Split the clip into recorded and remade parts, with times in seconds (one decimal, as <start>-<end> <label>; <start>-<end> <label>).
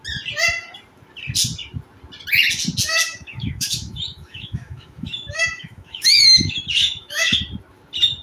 0.0-3.1 recorded; 3.1-7.4 remade; 7.4-8.2 recorded